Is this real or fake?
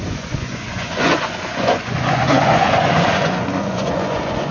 fake